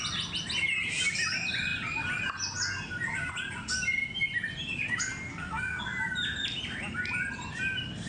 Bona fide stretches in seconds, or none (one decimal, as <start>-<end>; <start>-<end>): 0.0-5.3; 5.8-8.1